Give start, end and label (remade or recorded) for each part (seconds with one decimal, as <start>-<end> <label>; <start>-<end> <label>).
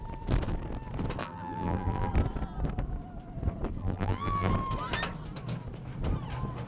0.0-1.2 recorded; 1.2-2.1 remade; 2.1-3.8 recorded; 3.8-4.5 remade; 4.5-6.7 recorded